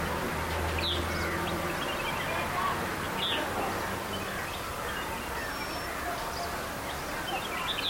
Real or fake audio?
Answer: real